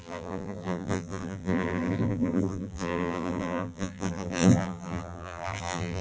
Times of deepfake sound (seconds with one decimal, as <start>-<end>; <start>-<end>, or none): 0.0-6.0